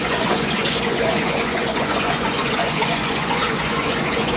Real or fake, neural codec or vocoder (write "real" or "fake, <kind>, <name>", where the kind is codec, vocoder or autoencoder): fake, vocoder, Vocos